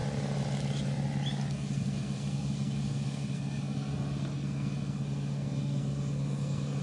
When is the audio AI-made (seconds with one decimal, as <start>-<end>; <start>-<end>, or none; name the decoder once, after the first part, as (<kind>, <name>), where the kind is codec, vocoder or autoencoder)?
1.5-6.8 (codec, SNAC)